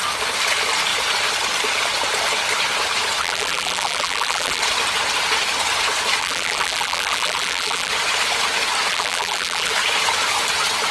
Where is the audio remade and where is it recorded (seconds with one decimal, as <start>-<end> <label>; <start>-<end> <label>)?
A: 0.0-3.2 recorded; 3.2-4.6 remade; 4.6-6.2 recorded; 6.2-7.9 remade; 7.9-8.9 recorded; 8.9-9.7 remade; 9.7-10.9 recorded